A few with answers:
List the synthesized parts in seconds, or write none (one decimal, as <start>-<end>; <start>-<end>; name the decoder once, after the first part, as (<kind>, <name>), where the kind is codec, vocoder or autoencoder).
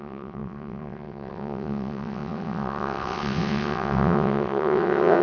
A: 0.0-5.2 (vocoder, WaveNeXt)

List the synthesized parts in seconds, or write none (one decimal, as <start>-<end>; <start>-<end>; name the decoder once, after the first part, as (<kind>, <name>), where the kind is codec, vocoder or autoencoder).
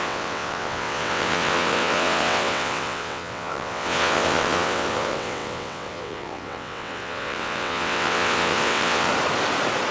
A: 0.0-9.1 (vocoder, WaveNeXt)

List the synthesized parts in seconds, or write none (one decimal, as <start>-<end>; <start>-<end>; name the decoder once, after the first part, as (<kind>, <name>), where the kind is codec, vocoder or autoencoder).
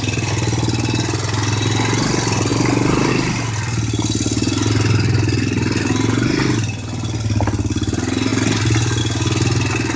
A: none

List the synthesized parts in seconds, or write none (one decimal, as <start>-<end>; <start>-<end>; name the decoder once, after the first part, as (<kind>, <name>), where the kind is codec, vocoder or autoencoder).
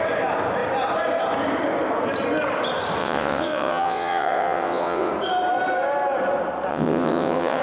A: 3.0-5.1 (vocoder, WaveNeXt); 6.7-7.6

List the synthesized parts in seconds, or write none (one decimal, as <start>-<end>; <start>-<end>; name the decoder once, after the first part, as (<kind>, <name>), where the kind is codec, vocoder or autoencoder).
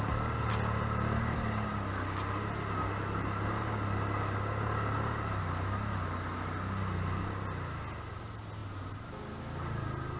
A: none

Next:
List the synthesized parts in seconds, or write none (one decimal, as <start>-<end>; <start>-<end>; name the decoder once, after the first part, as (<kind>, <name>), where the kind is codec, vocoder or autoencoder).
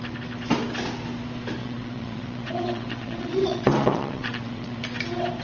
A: 1.6-4.8 (vocoder, WaveNeXt)